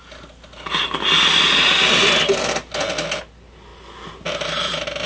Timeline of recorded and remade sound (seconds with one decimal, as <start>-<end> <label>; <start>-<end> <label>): 0.0-5.1 recorded

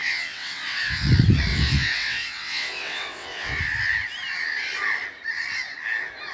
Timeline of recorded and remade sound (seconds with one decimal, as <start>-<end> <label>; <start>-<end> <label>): 0.0-1.1 remade; 1.1-1.5 recorded; 1.5-3.6 remade; 3.6-6.3 recorded

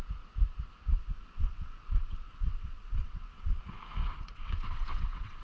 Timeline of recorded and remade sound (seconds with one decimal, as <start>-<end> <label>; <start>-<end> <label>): 0.0-0.9 recorded; 0.9-3.6 remade; 3.6-4.0 recorded; 4.0-5.4 remade